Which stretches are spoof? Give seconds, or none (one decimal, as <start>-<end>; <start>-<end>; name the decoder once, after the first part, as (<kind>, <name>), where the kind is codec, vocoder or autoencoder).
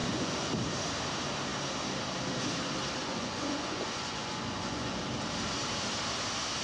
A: 0.0-0.5 (vocoder, Vocos); 3.0-5.0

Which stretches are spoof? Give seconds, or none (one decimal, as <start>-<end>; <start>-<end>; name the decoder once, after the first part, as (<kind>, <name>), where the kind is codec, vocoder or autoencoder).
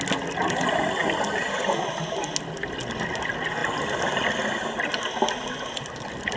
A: none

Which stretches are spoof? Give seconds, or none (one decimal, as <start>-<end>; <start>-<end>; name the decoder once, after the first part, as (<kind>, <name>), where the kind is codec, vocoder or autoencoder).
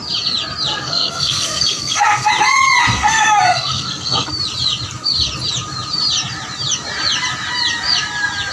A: 0.7-2.3 (codec, SNAC); 2.9-4.3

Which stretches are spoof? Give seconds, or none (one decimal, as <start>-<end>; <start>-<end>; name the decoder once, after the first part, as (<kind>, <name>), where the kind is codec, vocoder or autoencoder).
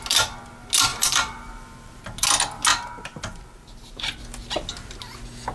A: 0.9-2.0 (vocoder, BigVGAN v2); 2.7-4.2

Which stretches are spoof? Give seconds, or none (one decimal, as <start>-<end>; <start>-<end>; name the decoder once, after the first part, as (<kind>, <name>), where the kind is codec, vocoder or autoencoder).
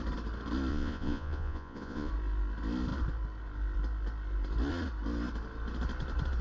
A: 0.7-2.1 (vocoder, Vocos)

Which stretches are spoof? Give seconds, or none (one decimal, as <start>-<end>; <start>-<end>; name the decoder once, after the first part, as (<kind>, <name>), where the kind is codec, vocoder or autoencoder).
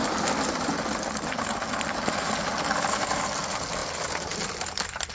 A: none